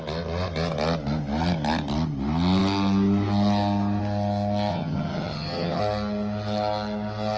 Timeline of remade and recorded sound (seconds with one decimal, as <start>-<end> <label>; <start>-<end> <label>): 0.0-4.7 recorded; 4.7-5.8 remade; 5.8-7.4 recorded